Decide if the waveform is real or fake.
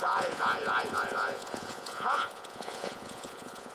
fake